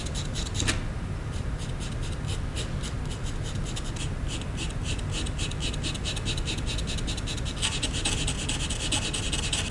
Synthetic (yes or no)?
no